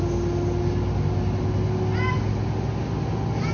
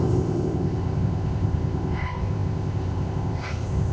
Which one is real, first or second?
first